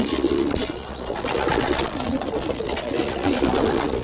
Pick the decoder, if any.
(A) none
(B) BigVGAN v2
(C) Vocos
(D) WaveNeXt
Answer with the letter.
C